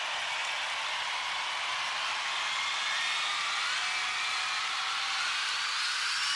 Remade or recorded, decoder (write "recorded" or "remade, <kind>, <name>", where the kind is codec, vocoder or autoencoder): recorded